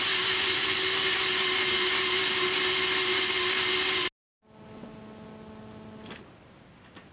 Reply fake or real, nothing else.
real